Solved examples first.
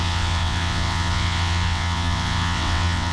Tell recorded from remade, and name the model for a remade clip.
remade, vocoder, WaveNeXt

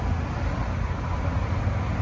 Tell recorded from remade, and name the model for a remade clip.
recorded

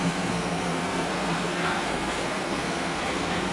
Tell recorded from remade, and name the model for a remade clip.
remade, codec, SNAC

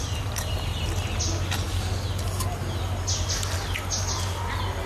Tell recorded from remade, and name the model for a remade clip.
recorded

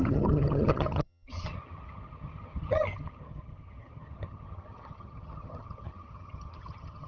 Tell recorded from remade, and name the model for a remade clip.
remade, vocoder, HiFi-GAN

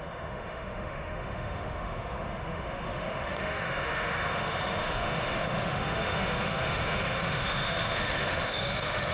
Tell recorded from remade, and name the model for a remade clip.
remade, autoencoder, DAC-VAE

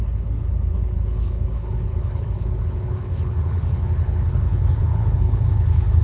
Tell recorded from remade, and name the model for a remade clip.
remade, codec, HILCodec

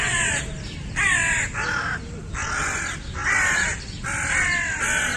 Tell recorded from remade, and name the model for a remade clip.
recorded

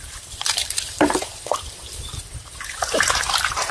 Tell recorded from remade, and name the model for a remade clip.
remade, vocoder, BigVGAN v2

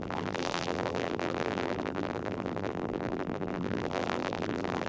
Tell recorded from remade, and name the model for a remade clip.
remade, vocoder, BigVGAN v2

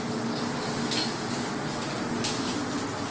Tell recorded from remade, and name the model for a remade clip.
recorded